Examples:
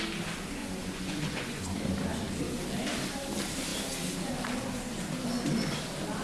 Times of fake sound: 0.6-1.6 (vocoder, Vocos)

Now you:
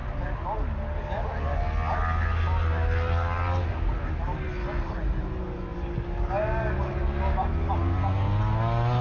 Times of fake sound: none

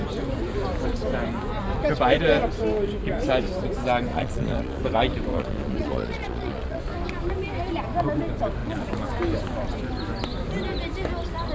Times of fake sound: 4.1-4.8 (vocoder, Vocos); 5.3-6.8

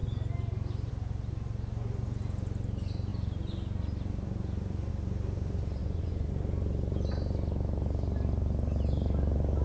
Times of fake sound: 5.8-6.3 (vocoder, Vocos)

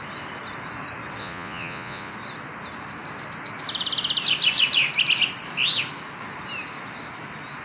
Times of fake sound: 1.2-2.1 (vocoder, Vocos)

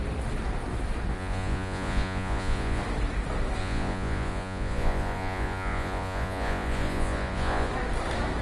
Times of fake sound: 1.1-2.8 (vocoder, Vocos); 3.6-7.7